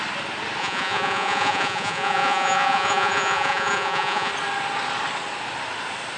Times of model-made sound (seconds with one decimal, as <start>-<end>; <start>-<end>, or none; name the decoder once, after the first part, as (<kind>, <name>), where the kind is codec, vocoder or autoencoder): 0.6-4.3 (vocoder, Vocos)